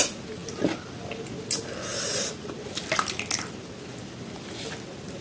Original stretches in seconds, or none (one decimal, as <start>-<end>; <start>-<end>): 0.0-5.2